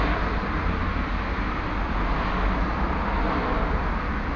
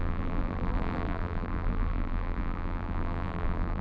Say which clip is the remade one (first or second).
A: second